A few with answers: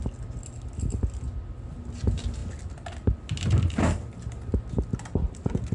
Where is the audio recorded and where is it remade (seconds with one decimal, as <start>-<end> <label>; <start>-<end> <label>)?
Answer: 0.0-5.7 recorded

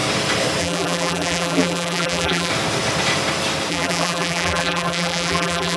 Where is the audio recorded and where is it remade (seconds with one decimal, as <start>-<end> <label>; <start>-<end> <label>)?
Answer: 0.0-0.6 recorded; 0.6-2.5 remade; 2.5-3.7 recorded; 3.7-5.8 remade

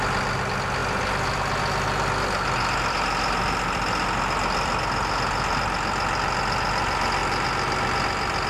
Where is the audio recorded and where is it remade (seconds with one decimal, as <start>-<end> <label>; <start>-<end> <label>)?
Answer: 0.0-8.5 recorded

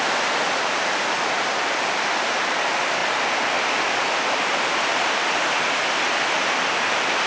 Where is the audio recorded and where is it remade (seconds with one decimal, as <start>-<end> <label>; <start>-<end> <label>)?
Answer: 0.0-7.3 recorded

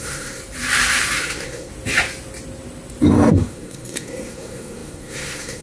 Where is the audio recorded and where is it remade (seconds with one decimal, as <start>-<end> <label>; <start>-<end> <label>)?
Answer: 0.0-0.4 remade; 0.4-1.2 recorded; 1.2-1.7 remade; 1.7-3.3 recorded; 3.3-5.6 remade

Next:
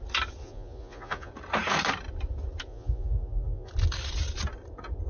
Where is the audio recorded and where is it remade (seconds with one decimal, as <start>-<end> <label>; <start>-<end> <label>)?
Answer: 0.0-0.4 recorded; 0.4-1.3 remade; 1.3-2.7 recorded; 2.7-3.7 remade; 3.7-5.1 recorded

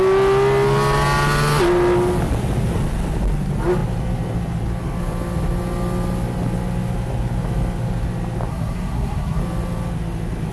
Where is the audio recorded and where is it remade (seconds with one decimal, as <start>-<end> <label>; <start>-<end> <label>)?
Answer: 0.0-8.5 recorded; 8.5-9.4 remade; 9.4-10.5 recorded

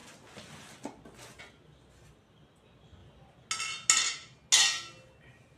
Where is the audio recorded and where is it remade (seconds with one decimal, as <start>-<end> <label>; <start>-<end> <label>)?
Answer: 0.0-5.6 recorded